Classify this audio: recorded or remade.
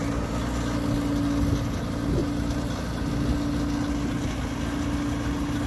recorded